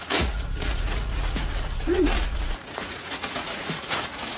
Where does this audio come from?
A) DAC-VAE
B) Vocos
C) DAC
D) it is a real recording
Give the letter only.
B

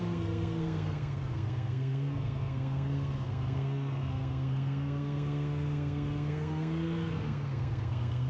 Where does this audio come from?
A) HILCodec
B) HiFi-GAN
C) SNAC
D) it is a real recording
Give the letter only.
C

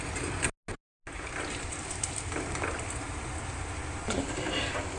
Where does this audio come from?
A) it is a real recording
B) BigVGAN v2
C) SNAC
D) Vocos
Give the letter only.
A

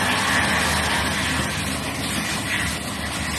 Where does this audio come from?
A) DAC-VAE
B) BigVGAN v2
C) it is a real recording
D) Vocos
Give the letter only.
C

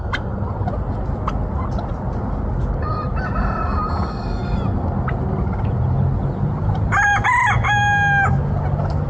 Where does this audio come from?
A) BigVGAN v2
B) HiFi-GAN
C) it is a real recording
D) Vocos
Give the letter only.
C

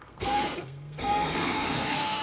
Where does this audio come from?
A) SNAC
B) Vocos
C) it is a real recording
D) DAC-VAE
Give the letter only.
A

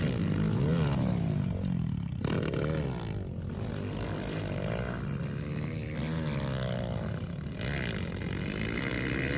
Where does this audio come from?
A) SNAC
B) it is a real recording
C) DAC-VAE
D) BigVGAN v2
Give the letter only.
B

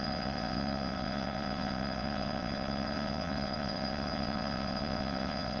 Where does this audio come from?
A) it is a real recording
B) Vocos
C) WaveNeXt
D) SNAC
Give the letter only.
C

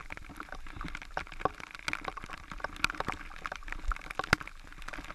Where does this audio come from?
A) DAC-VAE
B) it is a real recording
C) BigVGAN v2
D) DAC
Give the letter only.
B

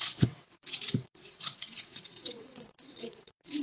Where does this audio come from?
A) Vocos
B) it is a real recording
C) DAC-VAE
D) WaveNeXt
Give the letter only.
D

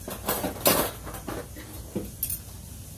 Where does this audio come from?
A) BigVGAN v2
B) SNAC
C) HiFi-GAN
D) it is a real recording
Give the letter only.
D